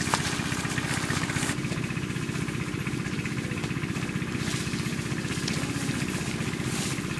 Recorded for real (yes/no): yes